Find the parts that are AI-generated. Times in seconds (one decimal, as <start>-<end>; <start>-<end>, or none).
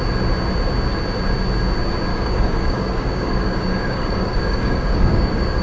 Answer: 2.1-5.6